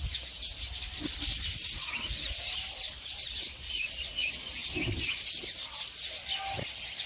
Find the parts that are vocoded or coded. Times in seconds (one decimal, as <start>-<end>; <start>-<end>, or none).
none